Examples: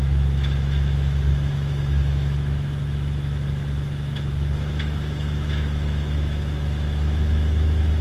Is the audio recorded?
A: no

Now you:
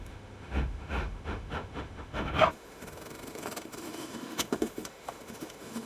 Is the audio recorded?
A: no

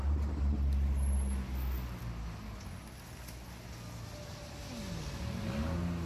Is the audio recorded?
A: yes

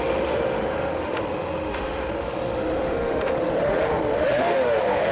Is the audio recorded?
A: no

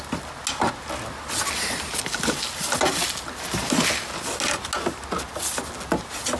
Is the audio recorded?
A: yes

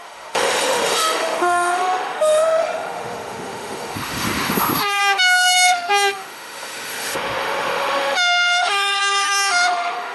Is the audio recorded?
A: no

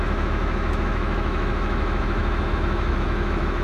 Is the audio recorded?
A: no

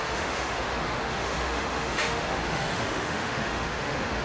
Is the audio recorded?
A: no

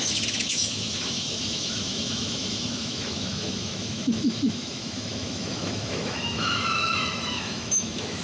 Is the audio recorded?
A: no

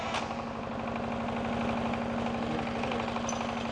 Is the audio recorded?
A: yes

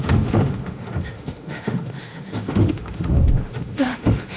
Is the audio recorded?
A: no